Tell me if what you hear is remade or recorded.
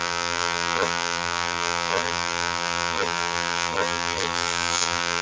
remade